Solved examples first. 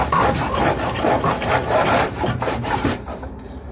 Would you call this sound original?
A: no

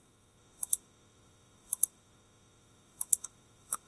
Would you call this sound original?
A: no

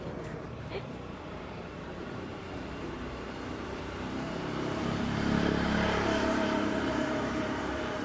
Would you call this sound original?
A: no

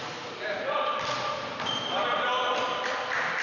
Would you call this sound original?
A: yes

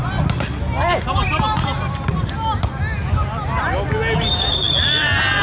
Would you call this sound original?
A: yes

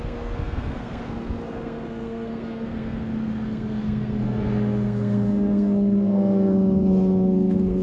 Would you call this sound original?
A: no